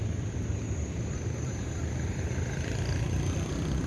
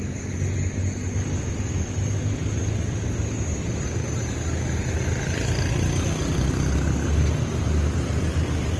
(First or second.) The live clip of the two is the second